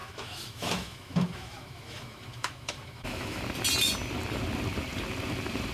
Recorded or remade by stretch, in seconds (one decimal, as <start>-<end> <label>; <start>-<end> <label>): 0.0-3.4 remade; 3.4-5.7 recorded